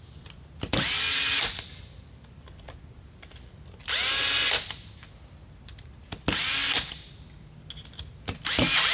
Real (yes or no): yes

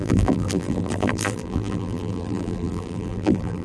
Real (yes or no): no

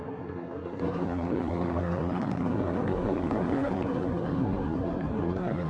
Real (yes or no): no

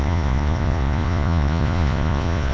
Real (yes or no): no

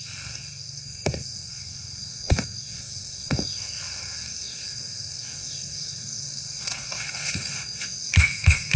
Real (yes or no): no